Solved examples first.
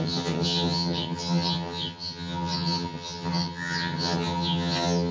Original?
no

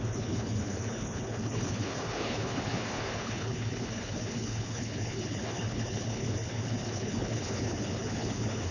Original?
no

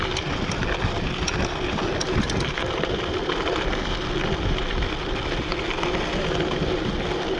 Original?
yes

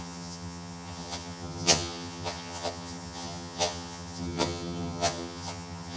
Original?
no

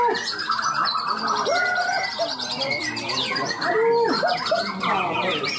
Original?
yes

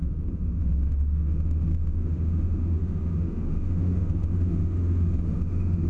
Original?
no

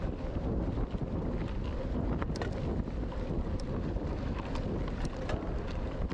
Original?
yes